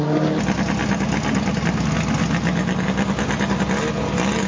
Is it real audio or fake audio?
real